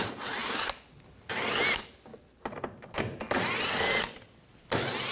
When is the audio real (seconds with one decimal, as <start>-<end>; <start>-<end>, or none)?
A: 0.0-5.1